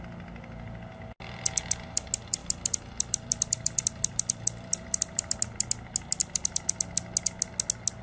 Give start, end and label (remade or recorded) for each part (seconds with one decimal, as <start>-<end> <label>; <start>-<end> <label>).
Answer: 0.0-2.4 recorded; 2.4-5.4 remade; 5.4-6.2 recorded; 6.2-6.9 remade; 6.9-8.0 recorded